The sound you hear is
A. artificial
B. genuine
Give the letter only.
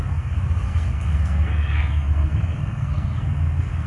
A